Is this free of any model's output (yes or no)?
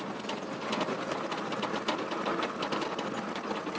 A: yes